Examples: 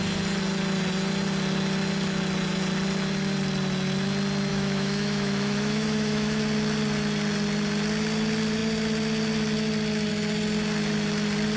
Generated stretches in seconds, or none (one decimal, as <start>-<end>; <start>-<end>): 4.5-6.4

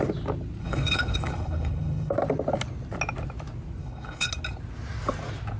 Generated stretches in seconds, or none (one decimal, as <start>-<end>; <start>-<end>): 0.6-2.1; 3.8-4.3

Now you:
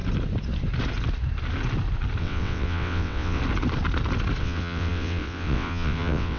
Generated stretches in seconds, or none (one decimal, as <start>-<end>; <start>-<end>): 2.2-3.4; 4.4-6.4